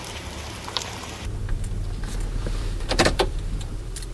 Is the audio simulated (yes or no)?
yes